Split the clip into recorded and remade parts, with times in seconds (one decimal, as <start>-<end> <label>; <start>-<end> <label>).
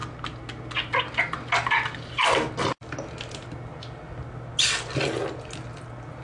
0.0-6.2 recorded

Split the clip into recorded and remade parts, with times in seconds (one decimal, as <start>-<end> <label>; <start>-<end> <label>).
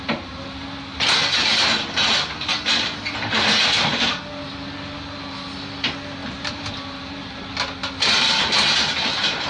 0.0-9.5 recorded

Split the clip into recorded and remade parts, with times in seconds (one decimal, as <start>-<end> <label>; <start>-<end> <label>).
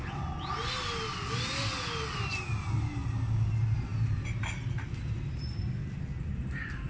0.0-6.9 recorded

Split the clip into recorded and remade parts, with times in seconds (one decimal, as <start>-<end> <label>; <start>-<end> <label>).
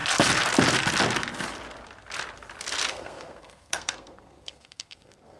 0.0-2.9 recorded; 2.9-5.4 remade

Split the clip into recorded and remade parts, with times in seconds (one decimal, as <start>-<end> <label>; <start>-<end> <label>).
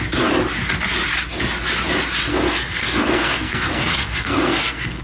0.0-2.3 recorded; 2.3-5.0 remade